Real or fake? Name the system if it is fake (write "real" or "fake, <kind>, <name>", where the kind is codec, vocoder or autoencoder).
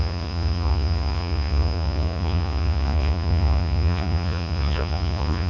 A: fake, vocoder, Vocos